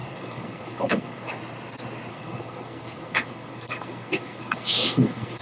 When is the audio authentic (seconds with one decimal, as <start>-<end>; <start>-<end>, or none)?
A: 1.3-2.1